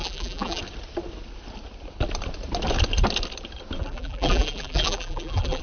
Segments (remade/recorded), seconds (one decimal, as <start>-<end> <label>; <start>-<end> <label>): 0.0-0.6 remade; 0.6-3.8 recorded; 3.8-5.6 remade